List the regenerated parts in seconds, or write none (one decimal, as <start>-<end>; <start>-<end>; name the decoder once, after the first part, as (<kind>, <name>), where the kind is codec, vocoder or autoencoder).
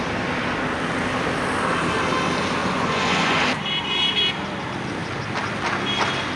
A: 2.6-3.4 (vocoder, Vocos)